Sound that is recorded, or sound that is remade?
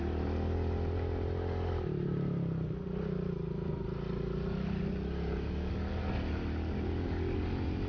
recorded